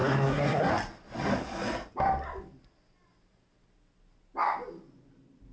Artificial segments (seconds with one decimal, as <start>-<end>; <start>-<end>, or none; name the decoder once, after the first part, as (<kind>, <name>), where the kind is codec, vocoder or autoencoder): 0.0-0.7 (codec, SNAC)